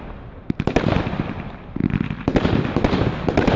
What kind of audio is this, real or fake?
real